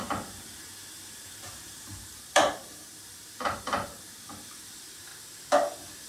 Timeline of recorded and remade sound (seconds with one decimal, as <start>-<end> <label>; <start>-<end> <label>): 0.0-5.1 remade; 5.1-6.1 recorded